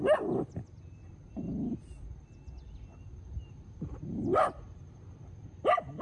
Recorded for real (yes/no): yes